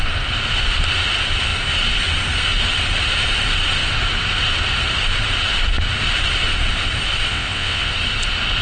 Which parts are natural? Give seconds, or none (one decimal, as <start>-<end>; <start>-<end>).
0.0-7.3; 7.9-8.6